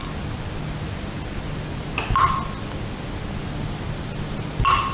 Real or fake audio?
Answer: real